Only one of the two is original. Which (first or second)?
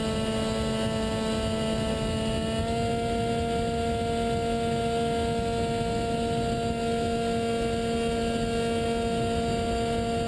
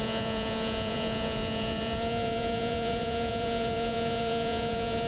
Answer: first